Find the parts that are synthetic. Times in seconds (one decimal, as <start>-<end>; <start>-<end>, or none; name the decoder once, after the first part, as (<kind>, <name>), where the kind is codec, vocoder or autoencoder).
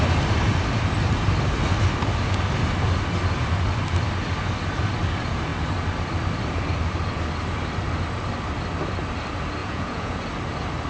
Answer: 9.6-10.2 (vocoder, Vocos)